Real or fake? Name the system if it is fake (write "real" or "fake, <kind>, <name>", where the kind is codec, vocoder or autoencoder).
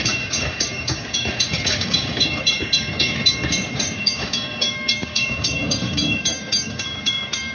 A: fake, codec, DAC